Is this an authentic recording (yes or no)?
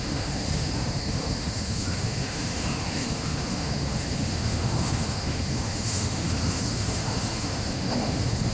no